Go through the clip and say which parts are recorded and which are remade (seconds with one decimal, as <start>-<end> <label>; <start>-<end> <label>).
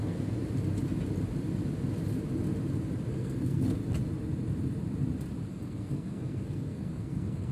0.0-0.4 remade; 0.4-3.1 recorded; 3.1-3.8 remade; 3.8-5.5 recorded; 5.5-7.5 remade